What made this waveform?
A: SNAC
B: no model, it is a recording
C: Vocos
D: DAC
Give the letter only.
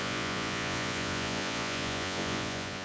C